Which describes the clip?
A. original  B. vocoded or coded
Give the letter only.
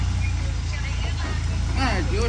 A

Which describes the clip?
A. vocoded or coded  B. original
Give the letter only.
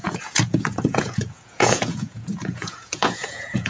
A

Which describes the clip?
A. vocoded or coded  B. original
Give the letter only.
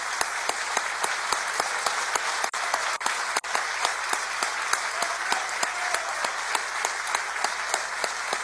A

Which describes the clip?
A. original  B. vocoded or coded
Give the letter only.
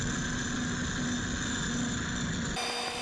A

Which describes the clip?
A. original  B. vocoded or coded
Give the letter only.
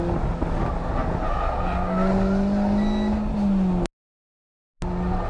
A